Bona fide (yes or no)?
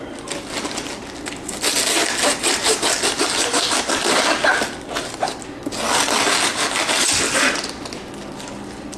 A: yes